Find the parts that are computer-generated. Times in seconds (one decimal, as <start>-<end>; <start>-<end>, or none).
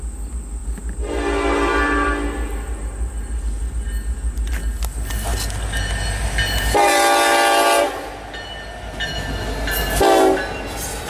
none